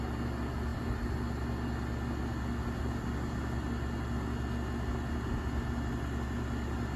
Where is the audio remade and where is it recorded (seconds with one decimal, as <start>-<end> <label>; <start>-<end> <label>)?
0.0-7.0 recorded